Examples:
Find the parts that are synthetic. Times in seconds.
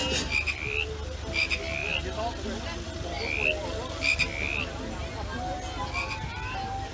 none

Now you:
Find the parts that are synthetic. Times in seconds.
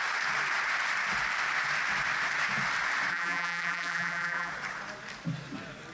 3.1-4.5 (vocoder, BigVGAN v2)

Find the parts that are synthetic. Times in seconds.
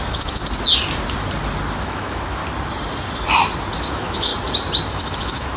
0.0-0.4 (autoencoder, DAC-VAE); 1.8-2.4; 3.8-4.3; 4.9-5.6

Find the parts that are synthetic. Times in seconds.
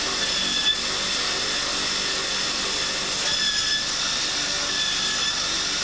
none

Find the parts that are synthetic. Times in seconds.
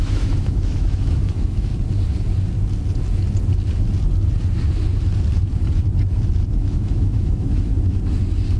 0.0-1.7 (autoencoder, DAC-VAE); 6.5-7.7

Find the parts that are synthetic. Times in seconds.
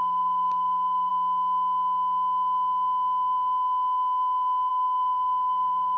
0.0-1.1 (codec, DAC); 4.7-6.0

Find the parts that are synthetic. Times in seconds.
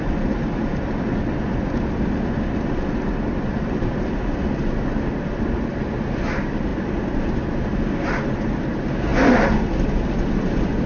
none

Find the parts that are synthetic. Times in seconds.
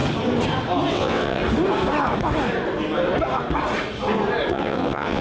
0.9-1.4 (vocoder, WaveNeXt); 4.5-5.2